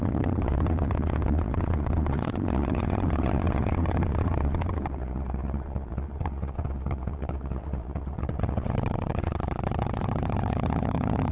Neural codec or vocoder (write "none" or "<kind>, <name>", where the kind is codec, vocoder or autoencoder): vocoder, Vocos